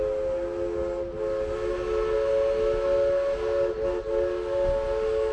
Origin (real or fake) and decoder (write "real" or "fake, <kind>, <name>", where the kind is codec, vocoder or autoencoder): real